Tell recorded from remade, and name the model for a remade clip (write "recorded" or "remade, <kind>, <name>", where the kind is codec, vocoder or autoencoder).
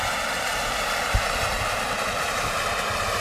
recorded